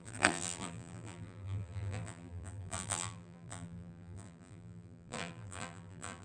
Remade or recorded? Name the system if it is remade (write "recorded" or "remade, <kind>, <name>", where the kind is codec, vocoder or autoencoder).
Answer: remade, vocoder, BigVGAN v2